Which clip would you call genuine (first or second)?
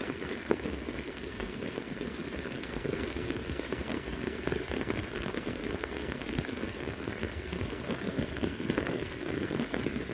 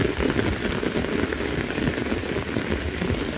second